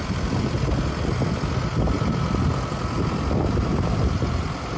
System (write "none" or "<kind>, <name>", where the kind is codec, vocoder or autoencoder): none